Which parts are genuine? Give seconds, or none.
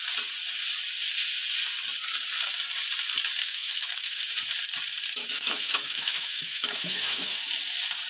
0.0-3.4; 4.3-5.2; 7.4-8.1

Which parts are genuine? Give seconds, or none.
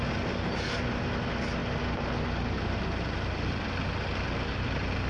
0.0-5.1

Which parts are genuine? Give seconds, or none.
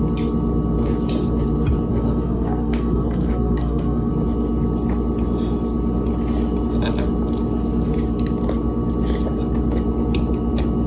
0.0-1.9; 4.1-10.9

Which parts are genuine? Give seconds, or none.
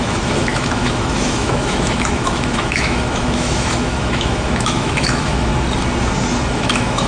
5.5-6.5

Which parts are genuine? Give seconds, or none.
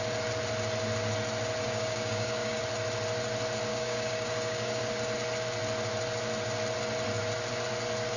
0.0-1.6; 2.6-3.7; 4.9-8.2